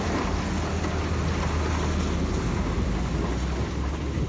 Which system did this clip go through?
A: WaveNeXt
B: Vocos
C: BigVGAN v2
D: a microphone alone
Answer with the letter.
D